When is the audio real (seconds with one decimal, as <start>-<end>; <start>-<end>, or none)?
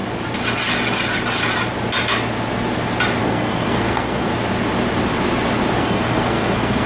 0.0-3.2; 4.3-5.8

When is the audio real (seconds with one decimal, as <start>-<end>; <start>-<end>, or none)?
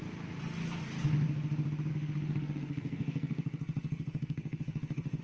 0.0-1.9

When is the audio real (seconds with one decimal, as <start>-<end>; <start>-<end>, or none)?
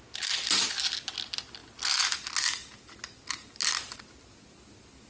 0.0-5.1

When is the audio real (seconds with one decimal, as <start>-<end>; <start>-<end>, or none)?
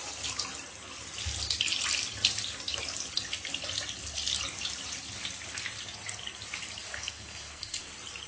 0.0-6.9; 7.9-8.3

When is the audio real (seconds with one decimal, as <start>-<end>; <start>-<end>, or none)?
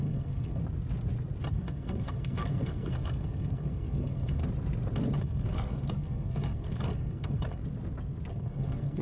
0.6-1.5; 4.4-5.2; 7.6-8.3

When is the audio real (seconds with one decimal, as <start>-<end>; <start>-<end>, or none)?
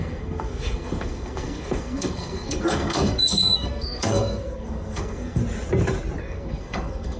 5.4-6.2